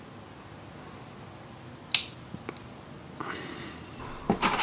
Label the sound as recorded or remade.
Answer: recorded